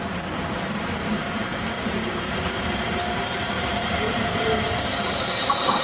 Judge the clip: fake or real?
fake